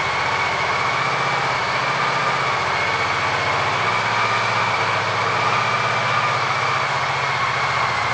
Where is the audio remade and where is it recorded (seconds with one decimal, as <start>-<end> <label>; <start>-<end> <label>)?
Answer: 0.0-8.1 recorded